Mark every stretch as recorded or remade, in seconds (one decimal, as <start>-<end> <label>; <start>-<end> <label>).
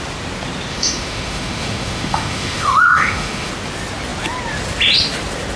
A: 0.0-0.7 recorded; 0.7-3.5 remade; 3.5-5.6 recorded